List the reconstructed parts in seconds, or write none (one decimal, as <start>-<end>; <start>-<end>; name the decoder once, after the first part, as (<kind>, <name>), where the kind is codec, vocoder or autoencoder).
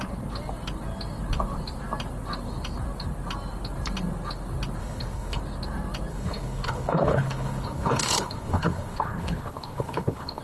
4.8-5.4 (codec, HILCodec); 6.1-10.4